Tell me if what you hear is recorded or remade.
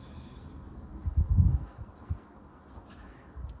remade